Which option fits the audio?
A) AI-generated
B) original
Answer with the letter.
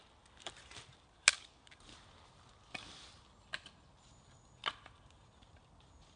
B